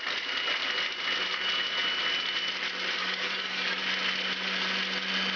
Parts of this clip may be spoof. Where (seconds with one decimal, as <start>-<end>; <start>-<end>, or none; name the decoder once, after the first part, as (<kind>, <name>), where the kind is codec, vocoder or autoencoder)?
3.0-3.8 (codec, DAC)